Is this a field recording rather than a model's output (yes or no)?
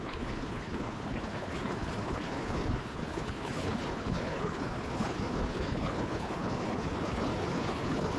no